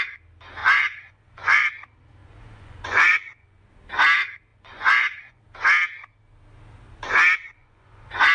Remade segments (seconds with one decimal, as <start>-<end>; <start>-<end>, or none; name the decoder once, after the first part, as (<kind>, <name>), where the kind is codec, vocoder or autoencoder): 0.6-1.7 (vocoder, Vocos); 2.2-3.7; 4.5-5.4; 7.6-8.3